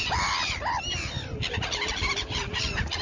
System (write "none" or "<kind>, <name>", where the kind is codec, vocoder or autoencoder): none